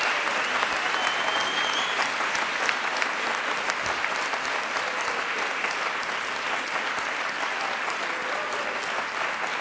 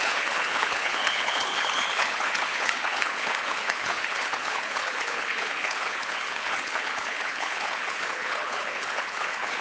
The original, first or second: first